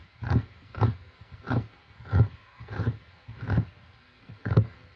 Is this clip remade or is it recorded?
remade